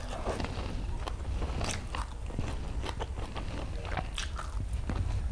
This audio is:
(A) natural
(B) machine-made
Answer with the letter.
A